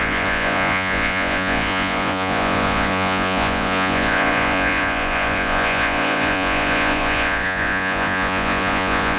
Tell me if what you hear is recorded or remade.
remade